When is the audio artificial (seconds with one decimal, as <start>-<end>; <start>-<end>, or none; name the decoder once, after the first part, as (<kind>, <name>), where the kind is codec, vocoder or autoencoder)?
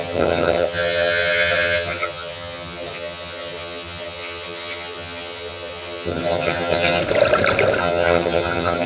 0.0-7.0 (vocoder, HiFi-GAN); 7.8-8.9